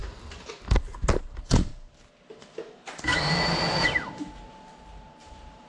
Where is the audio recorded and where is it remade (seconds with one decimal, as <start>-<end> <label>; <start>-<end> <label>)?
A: 0.0-1.7 remade; 1.7-2.3 recorded; 2.3-5.7 remade